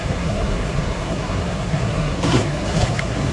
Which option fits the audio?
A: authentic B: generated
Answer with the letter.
B